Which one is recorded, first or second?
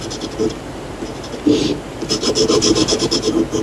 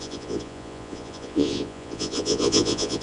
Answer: first